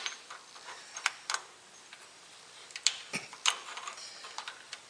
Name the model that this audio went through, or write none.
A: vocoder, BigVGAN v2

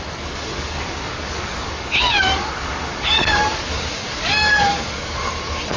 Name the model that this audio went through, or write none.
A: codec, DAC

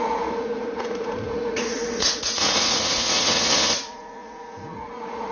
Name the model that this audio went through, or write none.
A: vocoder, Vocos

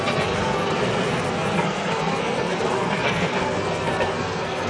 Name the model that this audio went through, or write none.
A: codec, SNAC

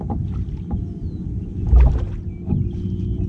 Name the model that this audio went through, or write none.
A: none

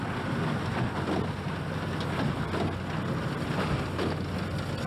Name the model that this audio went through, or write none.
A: none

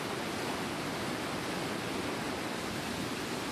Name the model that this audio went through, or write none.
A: none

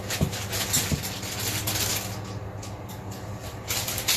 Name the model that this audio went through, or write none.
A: none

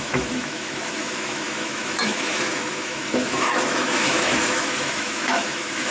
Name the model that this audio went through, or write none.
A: autoencoder, DAC-VAE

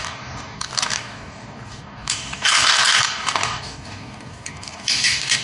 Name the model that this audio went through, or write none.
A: codec, DAC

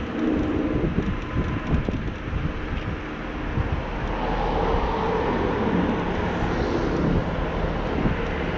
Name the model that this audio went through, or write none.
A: none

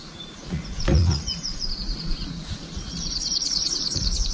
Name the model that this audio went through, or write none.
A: vocoder, Vocos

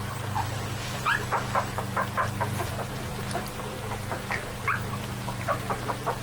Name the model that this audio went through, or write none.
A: vocoder, BigVGAN v2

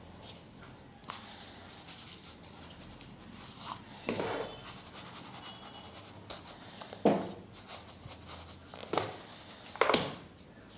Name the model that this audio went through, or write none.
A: none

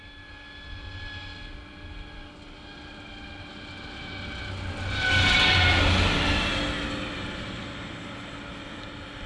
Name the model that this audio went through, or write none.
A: none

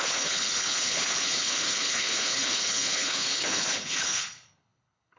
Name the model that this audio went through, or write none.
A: codec, HILCodec